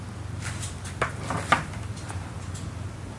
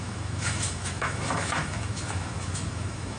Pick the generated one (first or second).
second